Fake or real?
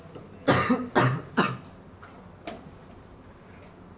real